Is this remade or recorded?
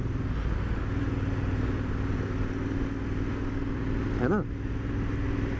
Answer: recorded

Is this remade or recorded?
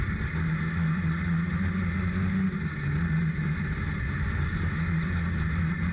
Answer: recorded